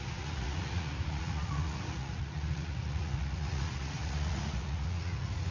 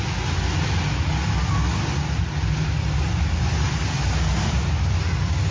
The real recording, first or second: second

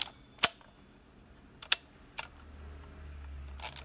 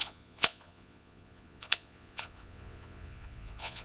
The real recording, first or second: first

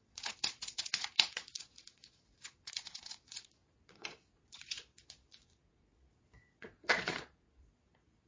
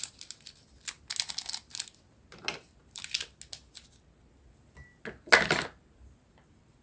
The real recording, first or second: second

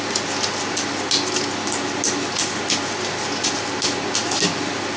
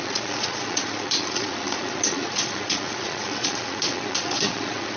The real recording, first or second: first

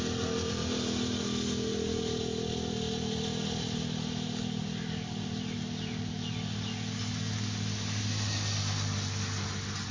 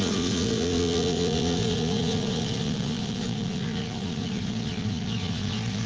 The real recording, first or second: first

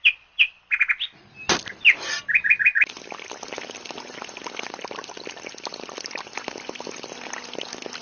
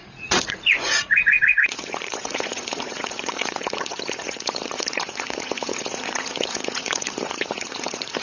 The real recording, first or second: first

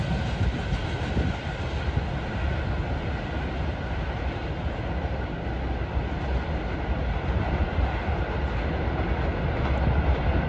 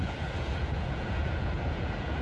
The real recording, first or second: first